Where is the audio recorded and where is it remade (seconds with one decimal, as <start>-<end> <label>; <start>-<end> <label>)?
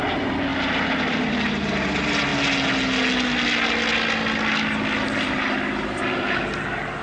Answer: 0.0-7.0 recorded